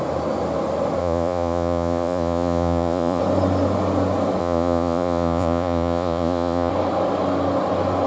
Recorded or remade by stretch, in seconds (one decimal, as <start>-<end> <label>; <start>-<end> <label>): 0.0-1.0 recorded; 1.0-3.2 remade; 3.2-4.4 recorded; 4.4-6.7 remade; 6.7-8.1 recorded